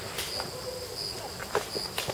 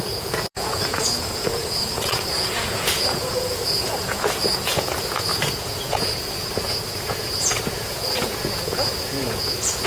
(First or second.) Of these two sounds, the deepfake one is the second